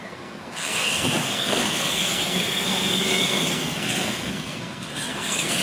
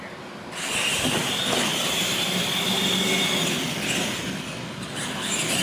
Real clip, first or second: second